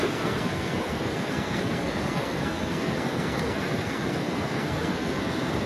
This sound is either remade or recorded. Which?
remade